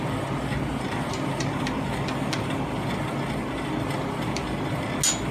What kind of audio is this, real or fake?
real